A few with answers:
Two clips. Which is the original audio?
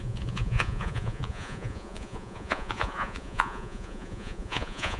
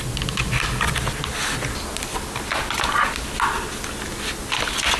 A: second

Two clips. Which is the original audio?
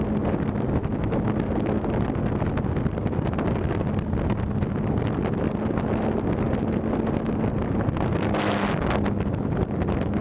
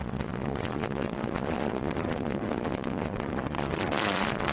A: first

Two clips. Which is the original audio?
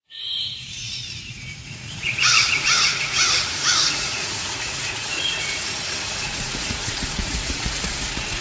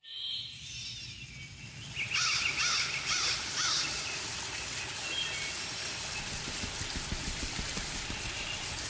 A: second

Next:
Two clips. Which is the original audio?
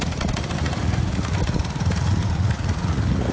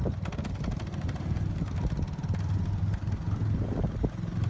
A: second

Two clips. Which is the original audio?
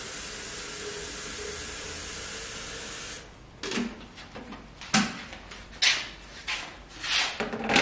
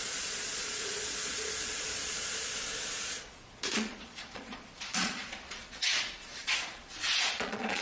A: first